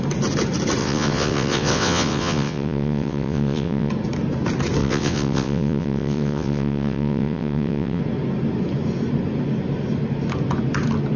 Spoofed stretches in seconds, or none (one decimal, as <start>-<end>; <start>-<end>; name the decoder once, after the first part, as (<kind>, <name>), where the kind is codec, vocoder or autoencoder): 0.8-3.9 (vocoder, WaveNeXt); 4.8-8.0